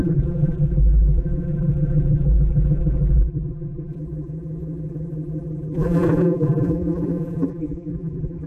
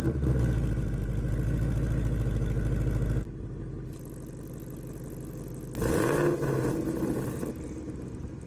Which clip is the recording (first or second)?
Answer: second